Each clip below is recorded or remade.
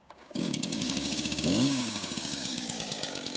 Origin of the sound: remade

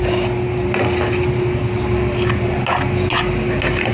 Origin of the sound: recorded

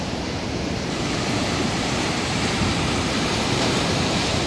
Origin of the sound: remade